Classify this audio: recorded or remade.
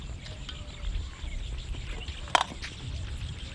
recorded